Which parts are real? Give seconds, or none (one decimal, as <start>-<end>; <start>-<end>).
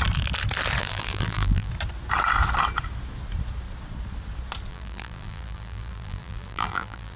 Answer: 0.0-0.8; 1.7-4.7